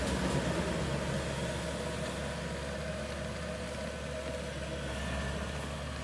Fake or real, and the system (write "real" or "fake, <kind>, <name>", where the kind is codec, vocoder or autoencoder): real